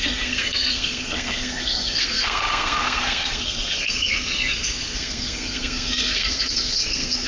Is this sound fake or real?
fake